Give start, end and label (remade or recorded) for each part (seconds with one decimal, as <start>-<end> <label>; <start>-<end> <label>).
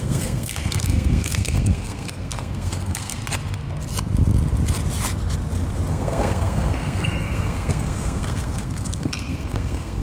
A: 0.0-3.2 remade; 3.2-5.9 recorded; 5.9-10.0 remade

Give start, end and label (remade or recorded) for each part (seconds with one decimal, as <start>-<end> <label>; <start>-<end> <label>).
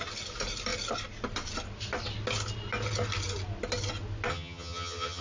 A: 0.0-4.3 recorded; 4.3-5.2 remade